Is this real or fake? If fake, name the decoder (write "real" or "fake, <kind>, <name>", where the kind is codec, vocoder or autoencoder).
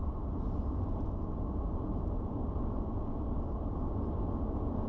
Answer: real